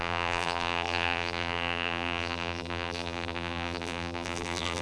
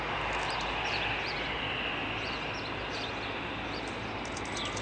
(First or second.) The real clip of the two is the second